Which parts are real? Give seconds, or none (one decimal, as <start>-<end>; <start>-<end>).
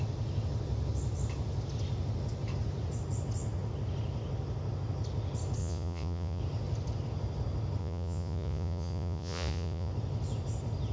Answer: 0.0-5.6; 6.4-7.8; 9.9-10.9